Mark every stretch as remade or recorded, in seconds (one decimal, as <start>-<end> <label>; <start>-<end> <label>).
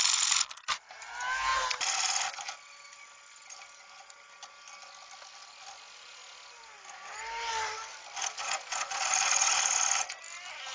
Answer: 0.0-10.7 recorded